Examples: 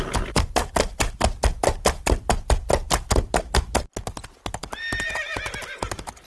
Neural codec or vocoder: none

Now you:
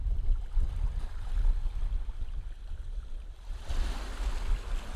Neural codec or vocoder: none